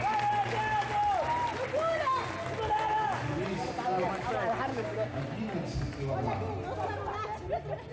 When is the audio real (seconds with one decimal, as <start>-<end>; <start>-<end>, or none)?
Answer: 0.0-4.7; 5.2-7.9